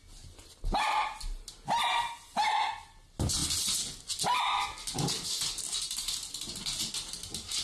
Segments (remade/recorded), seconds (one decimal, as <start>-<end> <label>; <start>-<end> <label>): 0.0-7.6 recorded